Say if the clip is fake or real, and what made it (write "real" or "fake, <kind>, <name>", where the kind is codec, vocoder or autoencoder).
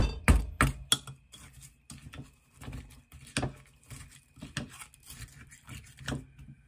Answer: real